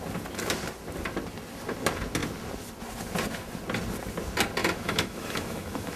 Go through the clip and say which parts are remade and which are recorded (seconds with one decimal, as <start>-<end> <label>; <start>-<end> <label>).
0.0-4.6 recorded; 4.6-6.0 remade

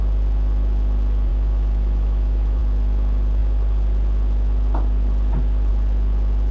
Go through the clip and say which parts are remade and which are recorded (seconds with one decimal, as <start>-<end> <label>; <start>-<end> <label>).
0.0-1.3 recorded; 1.3-2.6 remade; 2.6-6.5 recorded

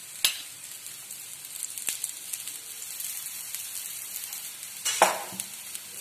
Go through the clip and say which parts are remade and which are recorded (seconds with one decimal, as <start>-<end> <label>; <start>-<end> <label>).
0.0-6.0 recorded

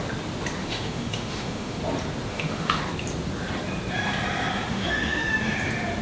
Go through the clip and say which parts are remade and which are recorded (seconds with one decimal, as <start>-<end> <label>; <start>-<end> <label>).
0.0-0.6 recorded; 0.6-1.8 remade; 1.8-2.3 recorded; 2.3-2.8 remade; 2.8-4.7 recorded; 4.7-5.3 remade; 5.3-6.0 recorded

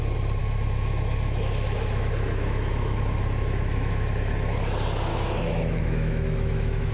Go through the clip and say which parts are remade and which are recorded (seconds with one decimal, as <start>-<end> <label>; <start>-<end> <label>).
0.0-0.4 recorded; 0.4-4.3 remade; 4.3-5.1 recorded; 5.1-6.9 remade

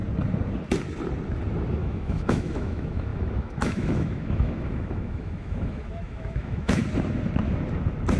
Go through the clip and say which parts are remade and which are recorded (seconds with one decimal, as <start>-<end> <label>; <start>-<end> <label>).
0.0-1.7 recorded; 1.7-6.8 remade; 6.8-8.2 recorded

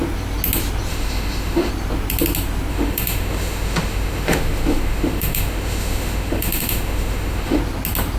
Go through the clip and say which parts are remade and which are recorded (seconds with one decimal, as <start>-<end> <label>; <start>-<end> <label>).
0.0-0.9 recorded; 0.9-1.7 remade; 1.7-2.7 recorded; 2.7-7.6 remade; 7.6-8.2 recorded

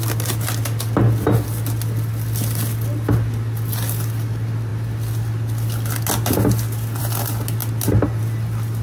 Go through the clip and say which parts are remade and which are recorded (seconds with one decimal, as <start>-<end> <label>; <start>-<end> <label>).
0.0-8.8 recorded